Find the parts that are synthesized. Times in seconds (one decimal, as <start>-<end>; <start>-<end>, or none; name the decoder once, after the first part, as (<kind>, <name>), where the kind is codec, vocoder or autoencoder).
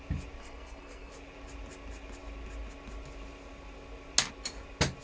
0.4-1.1 (codec, SNAC)